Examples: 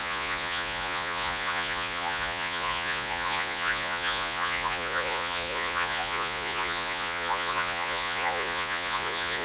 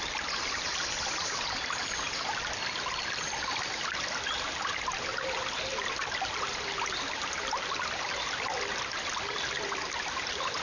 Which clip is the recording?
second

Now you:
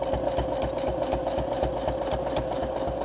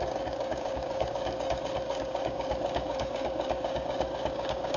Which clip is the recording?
first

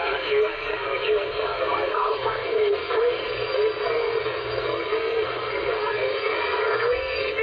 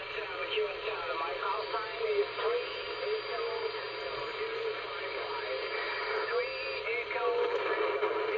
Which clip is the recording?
second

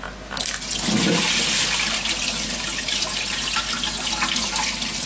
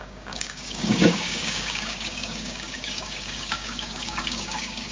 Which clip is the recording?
first